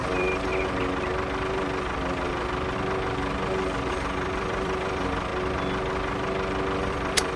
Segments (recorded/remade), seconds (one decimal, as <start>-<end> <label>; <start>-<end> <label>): 0.0-0.5 remade; 0.5-3.9 recorded; 3.9-5.3 remade; 5.3-6.8 recorded; 6.8-7.4 remade